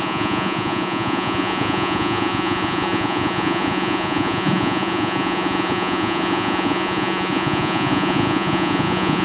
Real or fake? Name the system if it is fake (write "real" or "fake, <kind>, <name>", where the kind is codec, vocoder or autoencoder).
fake, vocoder, Vocos